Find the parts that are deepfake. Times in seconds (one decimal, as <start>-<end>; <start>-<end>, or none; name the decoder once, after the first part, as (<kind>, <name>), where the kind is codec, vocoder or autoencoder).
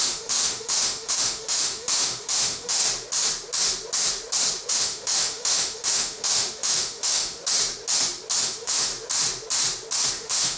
0.0-2.8 (autoencoder, DAC-VAE); 4.7-7.4; 8.4-8.9; 10.1-10.6